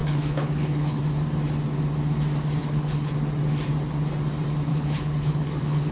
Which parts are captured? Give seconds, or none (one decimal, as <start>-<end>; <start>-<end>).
1.0-2.6; 3.1-4.7